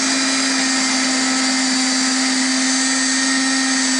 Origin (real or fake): real